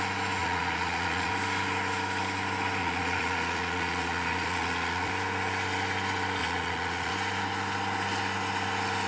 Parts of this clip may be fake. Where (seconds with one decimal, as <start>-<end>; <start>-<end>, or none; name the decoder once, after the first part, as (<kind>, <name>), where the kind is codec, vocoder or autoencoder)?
0.4-1.3 (vocoder, Vocos); 2.8-5.1; 6.4-7.1